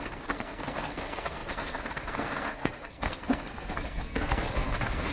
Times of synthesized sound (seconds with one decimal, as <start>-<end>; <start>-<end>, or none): 0.0-5.1